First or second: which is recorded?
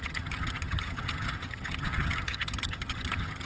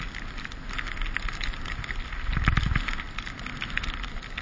second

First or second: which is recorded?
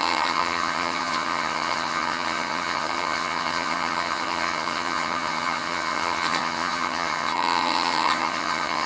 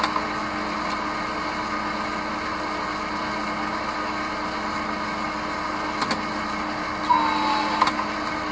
second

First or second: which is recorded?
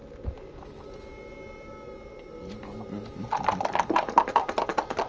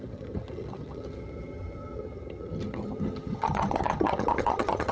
first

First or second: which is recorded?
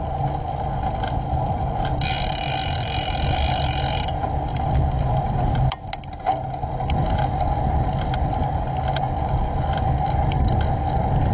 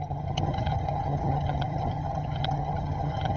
first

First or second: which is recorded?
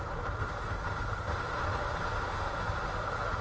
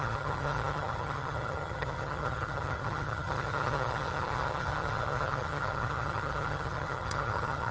first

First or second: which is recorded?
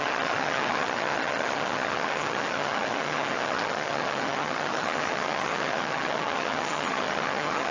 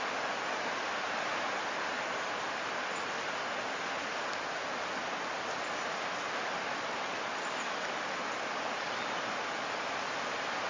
second